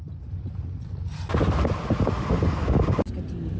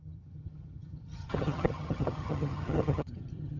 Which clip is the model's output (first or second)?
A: second